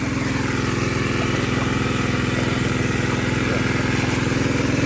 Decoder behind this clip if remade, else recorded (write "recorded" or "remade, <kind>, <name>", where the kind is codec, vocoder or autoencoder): recorded